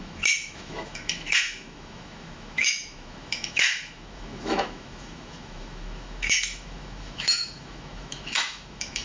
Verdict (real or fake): fake